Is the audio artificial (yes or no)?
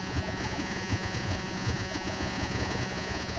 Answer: yes